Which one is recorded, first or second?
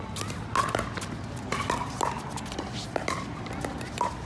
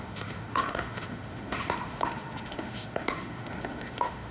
first